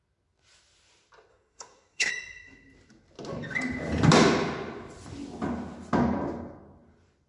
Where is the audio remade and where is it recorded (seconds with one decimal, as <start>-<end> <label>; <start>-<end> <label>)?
0.0-1.3 recorded; 1.3-2.1 remade; 2.1-7.3 recorded